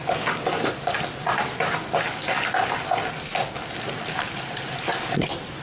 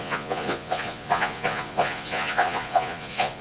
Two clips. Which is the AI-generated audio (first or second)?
second